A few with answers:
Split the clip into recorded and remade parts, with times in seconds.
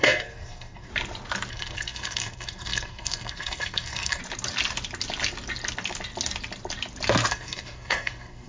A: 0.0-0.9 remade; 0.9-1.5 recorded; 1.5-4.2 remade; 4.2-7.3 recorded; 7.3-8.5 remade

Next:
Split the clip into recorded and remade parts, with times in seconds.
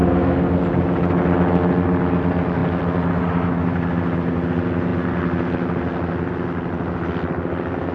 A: 0.0-0.6 remade; 0.6-7.9 recorded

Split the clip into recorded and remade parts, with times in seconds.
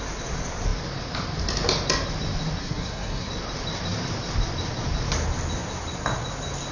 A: 0.0-2.6 recorded; 2.6-3.3 remade; 3.3-6.7 recorded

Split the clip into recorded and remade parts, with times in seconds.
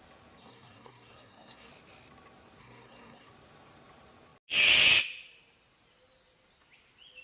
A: 0.0-0.4 recorded; 0.4-1.7 remade; 1.7-2.6 recorded; 2.6-3.3 remade; 3.3-7.2 recorded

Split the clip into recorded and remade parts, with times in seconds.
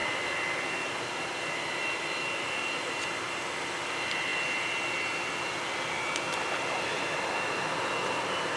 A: 0.0-8.6 recorded